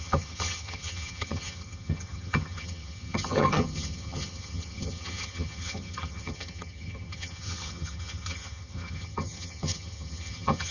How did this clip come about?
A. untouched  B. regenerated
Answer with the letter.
B